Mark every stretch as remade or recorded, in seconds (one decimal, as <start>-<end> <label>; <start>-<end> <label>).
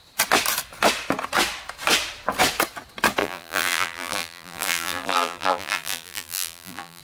0.0-3.2 recorded; 3.2-7.0 remade